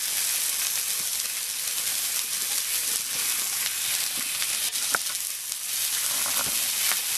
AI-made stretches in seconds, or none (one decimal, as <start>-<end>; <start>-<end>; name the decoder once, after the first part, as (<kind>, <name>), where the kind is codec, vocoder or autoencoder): none